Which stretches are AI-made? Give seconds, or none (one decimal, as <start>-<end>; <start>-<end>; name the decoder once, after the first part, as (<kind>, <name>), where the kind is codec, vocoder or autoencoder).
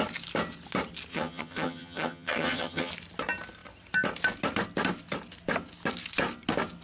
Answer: 1.1-2.9 (vocoder, HiFi-GAN)